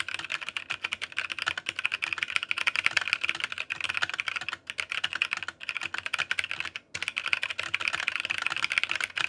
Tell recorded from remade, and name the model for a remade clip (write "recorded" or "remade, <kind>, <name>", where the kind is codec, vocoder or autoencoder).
recorded